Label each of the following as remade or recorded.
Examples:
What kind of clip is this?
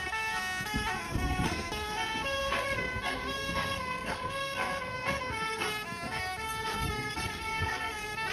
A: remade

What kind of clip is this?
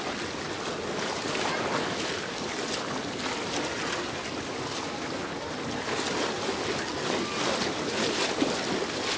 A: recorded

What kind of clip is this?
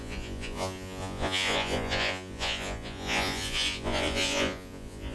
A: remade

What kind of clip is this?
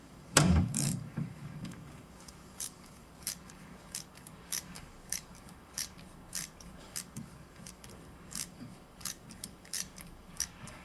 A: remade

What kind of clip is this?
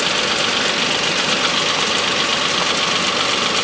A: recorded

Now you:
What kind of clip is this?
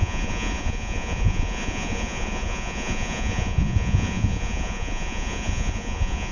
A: remade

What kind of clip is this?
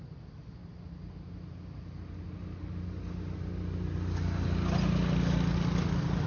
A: recorded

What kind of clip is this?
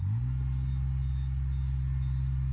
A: recorded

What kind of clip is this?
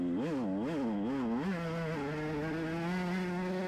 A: recorded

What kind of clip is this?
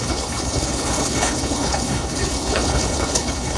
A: remade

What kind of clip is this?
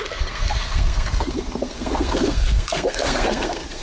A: remade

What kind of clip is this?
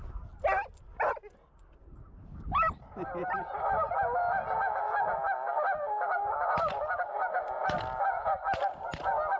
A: recorded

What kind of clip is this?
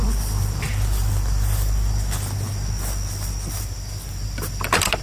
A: recorded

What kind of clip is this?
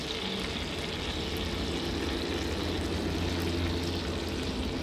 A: recorded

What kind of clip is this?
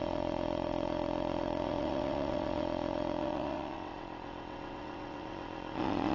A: remade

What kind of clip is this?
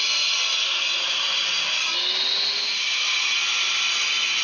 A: recorded